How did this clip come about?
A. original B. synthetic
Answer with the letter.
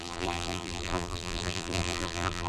B